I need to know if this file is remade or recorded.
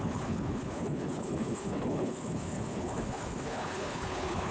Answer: remade